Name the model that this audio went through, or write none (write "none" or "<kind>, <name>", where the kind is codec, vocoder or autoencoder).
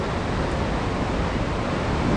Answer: none